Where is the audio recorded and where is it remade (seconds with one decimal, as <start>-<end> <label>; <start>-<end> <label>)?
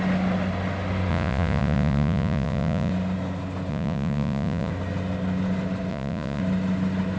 0.0-1.1 recorded; 1.1-2.9 remade; 2.9-3.7 recorded; 3.7-4.7 remade; 4.7-5.9 recorded; 5.9-6.4 remade; 6.4-7.2 recorded